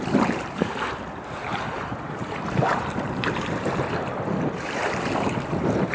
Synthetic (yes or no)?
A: yes